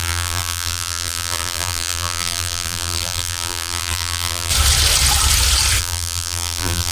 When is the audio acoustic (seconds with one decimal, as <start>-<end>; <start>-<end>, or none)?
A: 4.5-5.8